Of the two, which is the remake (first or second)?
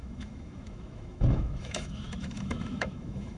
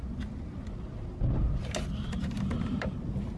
first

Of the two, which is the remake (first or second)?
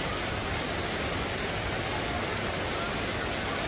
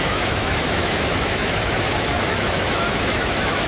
second